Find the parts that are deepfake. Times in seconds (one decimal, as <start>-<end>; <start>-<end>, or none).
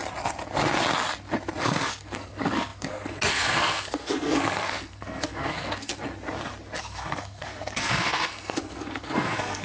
1.6-5.9; 6.8-9.6